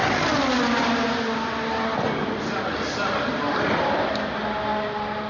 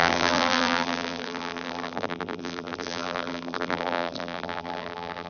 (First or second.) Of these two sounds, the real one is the first